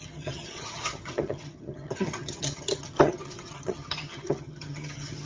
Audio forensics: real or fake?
fake